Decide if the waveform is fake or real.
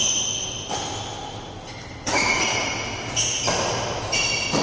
real